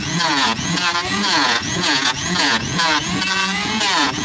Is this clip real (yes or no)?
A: no